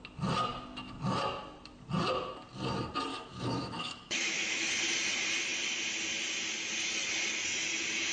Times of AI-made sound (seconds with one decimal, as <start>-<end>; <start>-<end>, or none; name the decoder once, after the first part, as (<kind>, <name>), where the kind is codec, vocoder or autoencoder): 3.1-4.7 (autoencoder, DAC-VAE)